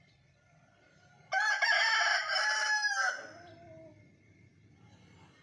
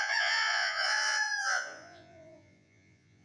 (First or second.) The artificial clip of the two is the second